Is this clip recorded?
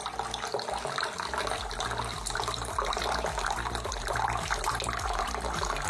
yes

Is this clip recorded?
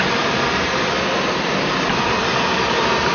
yes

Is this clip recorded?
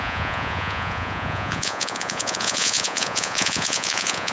no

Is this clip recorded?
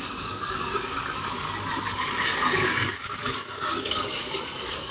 no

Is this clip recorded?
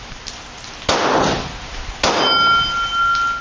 yes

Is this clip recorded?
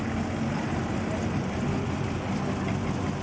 yes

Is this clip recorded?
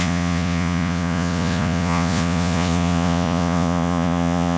no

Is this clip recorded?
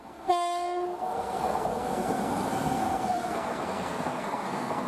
no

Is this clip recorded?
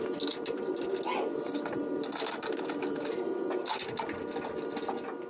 yes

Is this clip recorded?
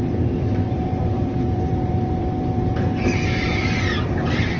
no